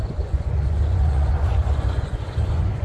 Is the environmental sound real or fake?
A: fake